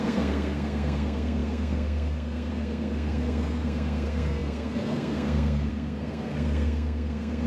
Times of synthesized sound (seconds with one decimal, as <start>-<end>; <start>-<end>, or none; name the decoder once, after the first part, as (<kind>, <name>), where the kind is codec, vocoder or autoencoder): 0.0-7.5 (codec, SNAC)